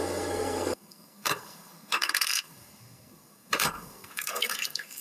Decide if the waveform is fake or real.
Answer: fake